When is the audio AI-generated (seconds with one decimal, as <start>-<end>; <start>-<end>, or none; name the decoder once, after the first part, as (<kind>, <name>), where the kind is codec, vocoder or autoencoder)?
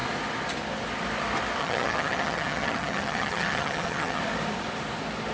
1.6-4.2 (vocoder, HiFi-GAN)